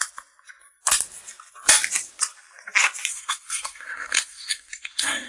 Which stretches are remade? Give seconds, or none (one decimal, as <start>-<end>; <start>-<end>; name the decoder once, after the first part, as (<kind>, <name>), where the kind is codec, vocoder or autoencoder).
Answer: 3.1-5.3 (codec, SNAC)